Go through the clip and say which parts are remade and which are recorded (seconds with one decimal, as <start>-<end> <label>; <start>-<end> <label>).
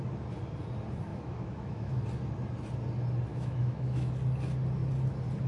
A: 0.0-1.1 recorded; 1.1-2.0 remade; 2.0-3.3 recorded; 3.3-4.1 remade; 4.1-5.5 recorded